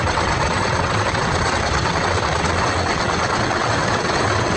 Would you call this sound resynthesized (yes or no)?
yes